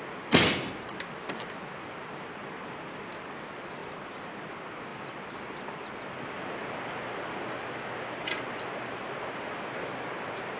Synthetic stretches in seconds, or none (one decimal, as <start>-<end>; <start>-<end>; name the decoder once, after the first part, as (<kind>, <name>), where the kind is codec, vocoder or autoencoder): none